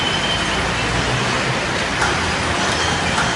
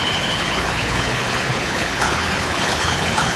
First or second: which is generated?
second